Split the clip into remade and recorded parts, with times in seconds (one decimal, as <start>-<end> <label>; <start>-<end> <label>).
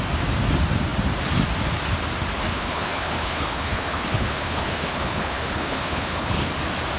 0.0-2.5 recorded; 2.5-6.5 remade; 6.5-7.0 recorded